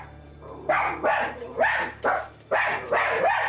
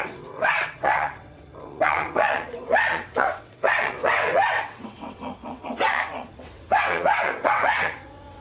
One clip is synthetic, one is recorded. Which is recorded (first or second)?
first